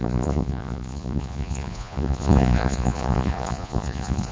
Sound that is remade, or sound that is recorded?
remade